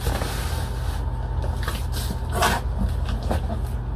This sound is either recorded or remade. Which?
recorded